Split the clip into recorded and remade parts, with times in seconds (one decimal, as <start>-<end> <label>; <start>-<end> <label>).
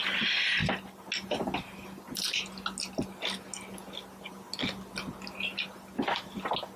0.0-6.8 recorded